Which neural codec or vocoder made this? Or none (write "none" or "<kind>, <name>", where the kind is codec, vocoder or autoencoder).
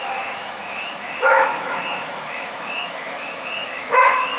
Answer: autoencoder, DAC-VAE